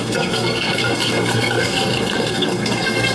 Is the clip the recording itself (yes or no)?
no